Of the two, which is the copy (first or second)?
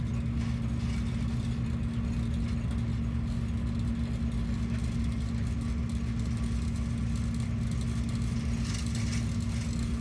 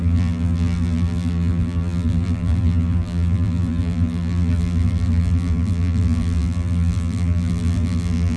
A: second